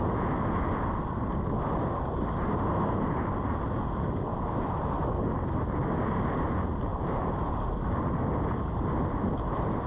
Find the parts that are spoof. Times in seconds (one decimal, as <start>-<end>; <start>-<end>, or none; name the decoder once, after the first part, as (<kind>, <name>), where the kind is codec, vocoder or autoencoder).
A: 4.3-5.1 (vocoder, BigVGAN v2); 6.9-7.6

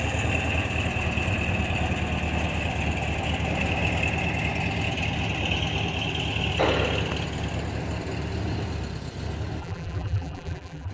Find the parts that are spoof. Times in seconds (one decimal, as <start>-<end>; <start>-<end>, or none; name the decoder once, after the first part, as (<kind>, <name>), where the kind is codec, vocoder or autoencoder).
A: 9.6-10.9 (vocoder, BigVGAN v2)

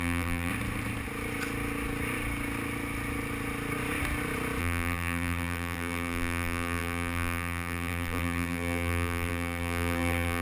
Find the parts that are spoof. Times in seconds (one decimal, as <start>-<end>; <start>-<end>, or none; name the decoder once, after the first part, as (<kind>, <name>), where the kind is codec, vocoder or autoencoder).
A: 0.0-0.5 (vocoder, BigVGAN v2); 4.6-10.4